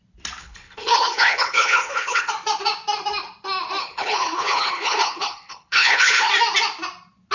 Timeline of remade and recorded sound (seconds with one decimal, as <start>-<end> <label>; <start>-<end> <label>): 0.0-0.4 recorded; 0.4-2.3 remade; 2.3-3.8 recorded; 3.8-6.3 remade; 6.3-7.3 recorded

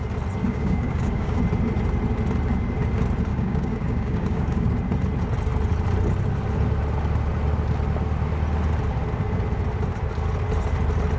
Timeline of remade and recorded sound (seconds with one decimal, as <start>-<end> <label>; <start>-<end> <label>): 0.0-0.4 recorded; 0.4-1.4 remade; 1.4-3.3 recorded; 3.3-4.7 remade; 4.7-11.2 recorded

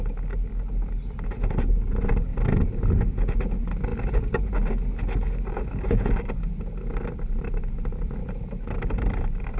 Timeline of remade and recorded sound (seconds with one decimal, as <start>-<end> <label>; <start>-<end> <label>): 0.0-8.2 recorded; 8.2-9.2 remade; 9.2-9.6 recorded

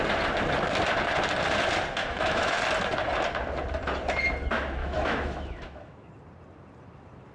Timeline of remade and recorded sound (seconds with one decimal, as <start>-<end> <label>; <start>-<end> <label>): 0.0-2.0 recorded; 2.0-2.6 remade; 2.6-4.8 recorded; 4.8-6.1 remade; 6.1-7.3 recorded